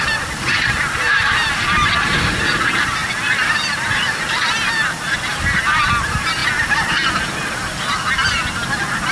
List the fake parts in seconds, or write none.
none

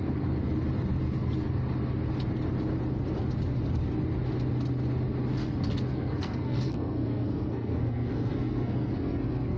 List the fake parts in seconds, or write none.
5.3-9.6

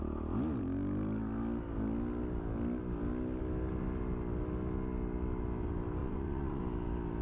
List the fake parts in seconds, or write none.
6.0-6.6

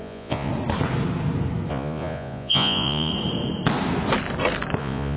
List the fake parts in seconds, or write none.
0.0-0.5; 1.7-3.1; 4.8-5.2

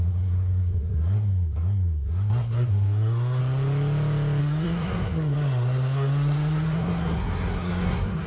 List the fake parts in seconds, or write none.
0.0-3.4; 4.4-8.3

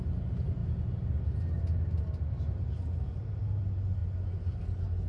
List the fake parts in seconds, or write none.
none

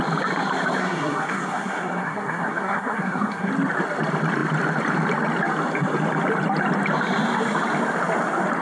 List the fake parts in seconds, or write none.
0.8-3.5

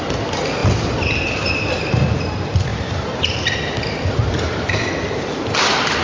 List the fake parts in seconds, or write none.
2.7-4.9